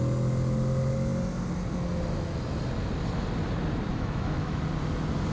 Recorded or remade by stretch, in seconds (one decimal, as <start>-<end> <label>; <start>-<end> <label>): 0.0-3.9 recorded; 3.9-4.6 remade; 4.6-5.3 recorded